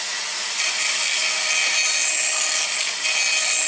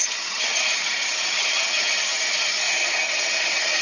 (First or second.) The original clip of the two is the first